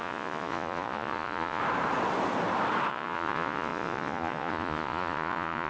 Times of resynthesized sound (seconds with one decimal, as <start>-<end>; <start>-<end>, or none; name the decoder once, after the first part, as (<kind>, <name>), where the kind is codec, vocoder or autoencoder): 0.0-1.6 (vocoder, Vocos); 2.9-5.7